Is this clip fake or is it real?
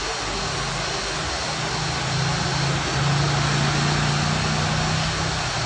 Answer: real